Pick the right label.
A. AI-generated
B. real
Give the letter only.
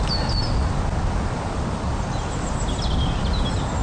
B